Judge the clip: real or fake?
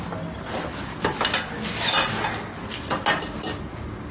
real